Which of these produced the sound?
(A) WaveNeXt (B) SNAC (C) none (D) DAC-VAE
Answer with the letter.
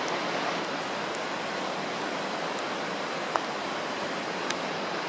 C